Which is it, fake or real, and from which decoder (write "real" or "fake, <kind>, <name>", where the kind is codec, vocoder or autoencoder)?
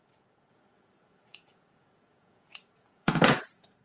fake, vocoder, Vocos